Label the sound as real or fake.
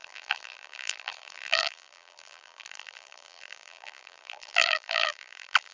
fake